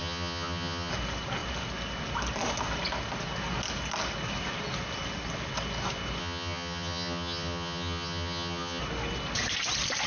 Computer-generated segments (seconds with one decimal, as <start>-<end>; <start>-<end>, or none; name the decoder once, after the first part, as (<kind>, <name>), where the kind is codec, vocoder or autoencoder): 0.0-0.9 (vocoder, HiFi-GAN); 6.2-8.8